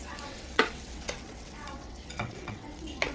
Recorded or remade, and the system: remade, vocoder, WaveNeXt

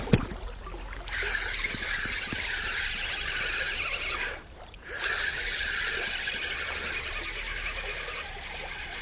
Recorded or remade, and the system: recorded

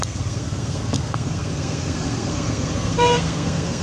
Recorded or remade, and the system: remade, codec, SNAC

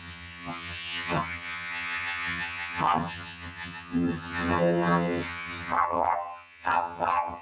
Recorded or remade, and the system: remade, vocoder, HiFi-GAN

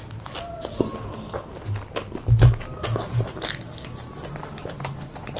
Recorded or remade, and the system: recorded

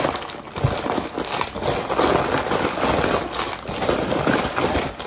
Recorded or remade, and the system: recorded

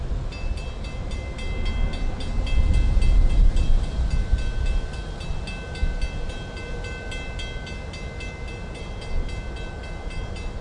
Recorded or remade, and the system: recorded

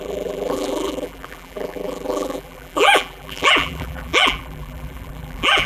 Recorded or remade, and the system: remade, vocoder, BigVGAN v2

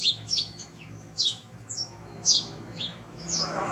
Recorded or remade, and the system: remade, autoencoder, DAC-VAE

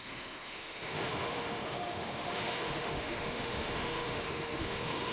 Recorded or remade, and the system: remade, autoencoder, DAC-VAE